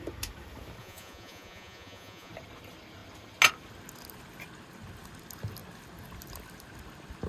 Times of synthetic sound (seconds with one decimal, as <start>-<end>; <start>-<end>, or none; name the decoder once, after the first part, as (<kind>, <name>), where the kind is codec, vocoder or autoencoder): 0.8-2.3 (vocoder, Vocos)

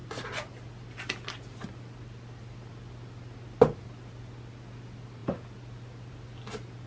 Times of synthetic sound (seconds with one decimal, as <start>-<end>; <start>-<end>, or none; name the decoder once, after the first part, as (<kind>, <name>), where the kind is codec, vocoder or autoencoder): none

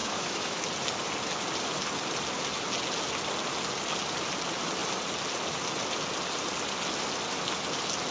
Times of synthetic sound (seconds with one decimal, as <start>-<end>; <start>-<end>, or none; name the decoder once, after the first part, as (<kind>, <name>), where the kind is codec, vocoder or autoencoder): 0.0-0.6 (autoencoder, DAC-VAE)

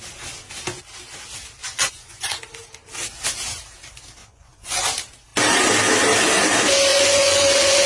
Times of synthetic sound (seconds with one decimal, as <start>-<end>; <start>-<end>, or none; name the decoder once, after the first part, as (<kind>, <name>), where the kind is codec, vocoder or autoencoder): 1.6-2.4 (vocoder, Vocos); 4.2-4.8; 6.9-7.9

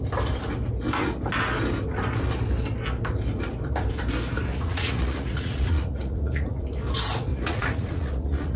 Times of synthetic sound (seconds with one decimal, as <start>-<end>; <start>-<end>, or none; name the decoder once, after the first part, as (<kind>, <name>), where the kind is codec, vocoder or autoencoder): 4.5-6.6 (vocoder, Vocos); 7.3-8.6